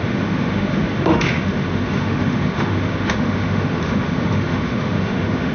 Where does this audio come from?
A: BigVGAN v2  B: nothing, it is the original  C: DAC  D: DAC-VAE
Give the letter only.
D